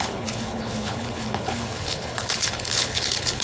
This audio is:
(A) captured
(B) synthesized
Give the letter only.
B